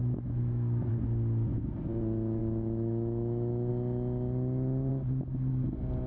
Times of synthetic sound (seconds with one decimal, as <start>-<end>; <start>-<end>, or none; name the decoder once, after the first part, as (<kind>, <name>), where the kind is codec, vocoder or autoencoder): 0.0-0.9 (autoencoder, DAC-VAE); 2.4-3.7

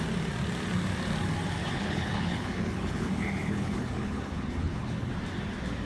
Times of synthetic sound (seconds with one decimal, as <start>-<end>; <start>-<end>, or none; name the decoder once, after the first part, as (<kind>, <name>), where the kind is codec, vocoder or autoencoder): 1.6-5.1 (codec, HILCodec)

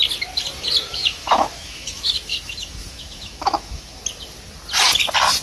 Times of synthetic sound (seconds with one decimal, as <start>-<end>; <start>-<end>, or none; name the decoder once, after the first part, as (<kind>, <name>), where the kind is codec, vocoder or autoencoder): 0.9-4.0 (autoencoder, DAC-VAE)